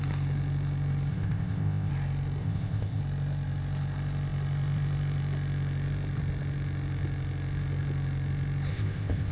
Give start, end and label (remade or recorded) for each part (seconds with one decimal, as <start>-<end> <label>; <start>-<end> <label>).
0.0-1.1 recorded; 1.1-1.9 remade; 1.9-2.4 recorded; 2.4-3.0 remade; 3.0-8.7 recorded; 8.7-9.3 remade